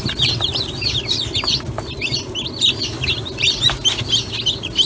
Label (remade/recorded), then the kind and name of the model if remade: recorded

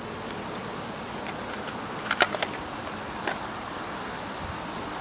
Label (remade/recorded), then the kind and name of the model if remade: recorded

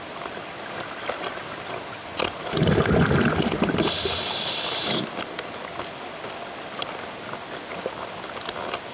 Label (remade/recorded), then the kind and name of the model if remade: recorded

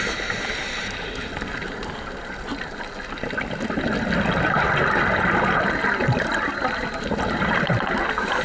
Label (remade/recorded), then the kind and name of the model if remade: recorded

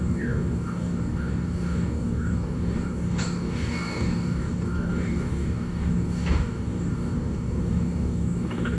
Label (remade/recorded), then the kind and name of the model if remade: remade, codec, DAC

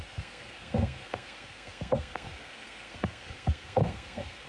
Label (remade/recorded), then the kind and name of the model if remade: remade, codec, SNAC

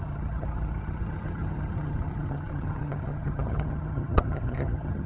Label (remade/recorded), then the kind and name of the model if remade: remade, vocoder, HiFi-GAN